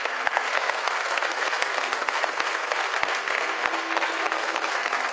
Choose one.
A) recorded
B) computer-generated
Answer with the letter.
B